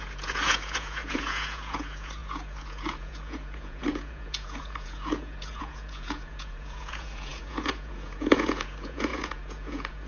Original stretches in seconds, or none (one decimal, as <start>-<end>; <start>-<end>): none

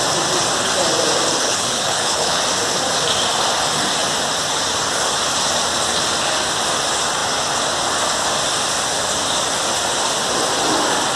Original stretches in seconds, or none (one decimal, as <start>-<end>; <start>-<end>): 0.0-1.4; 2.4-11.2